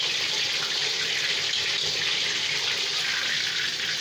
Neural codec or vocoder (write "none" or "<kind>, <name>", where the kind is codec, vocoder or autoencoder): none